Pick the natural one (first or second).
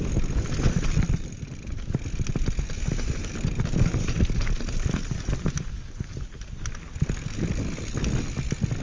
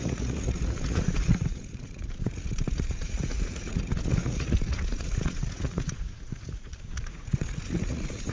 first